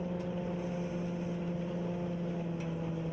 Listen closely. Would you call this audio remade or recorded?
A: recorded